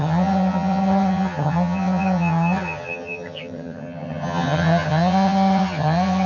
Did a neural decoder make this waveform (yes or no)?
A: yes